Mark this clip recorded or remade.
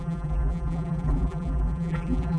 remade